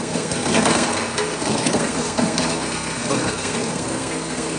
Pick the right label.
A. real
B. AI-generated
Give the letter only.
B